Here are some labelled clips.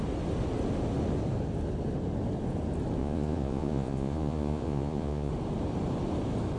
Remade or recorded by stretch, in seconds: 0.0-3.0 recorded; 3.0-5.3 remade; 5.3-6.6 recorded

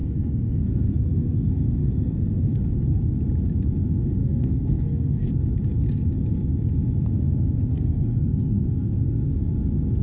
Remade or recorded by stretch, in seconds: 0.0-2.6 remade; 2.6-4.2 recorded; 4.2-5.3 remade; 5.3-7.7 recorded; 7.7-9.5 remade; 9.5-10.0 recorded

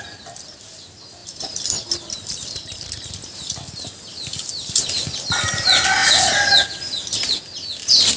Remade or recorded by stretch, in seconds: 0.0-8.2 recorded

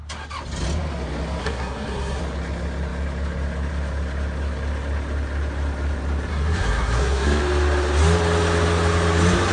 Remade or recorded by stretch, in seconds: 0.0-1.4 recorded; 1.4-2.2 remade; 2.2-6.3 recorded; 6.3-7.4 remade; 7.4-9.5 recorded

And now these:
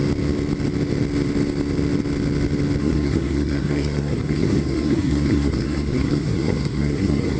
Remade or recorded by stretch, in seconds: 0.0-2.8 recorded; 2.8-7.4 remade

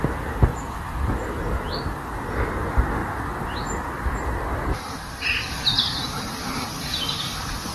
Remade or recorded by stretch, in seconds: 0.0-0.5 recorded; 0.5-1.1 remade; 1.1-3.0 recorded; 3.0-6.5 remade; 6.5-7.7 recorded